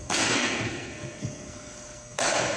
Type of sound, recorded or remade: remade